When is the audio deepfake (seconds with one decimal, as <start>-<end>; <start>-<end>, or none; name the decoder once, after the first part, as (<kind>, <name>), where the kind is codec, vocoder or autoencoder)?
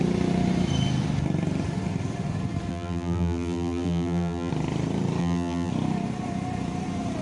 2.7-4.5 (vocoder, BigVGAN v2); 5.2-5.7